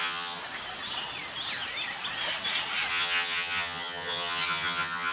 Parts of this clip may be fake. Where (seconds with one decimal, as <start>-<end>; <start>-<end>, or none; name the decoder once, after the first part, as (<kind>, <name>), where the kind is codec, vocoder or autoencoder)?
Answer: 0.0-0.4 (vocoder, HiFi-GAN); 2.9-5.1